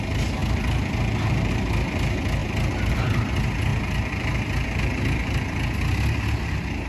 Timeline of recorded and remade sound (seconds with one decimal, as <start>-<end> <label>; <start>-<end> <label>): 0.0-6.9 recorded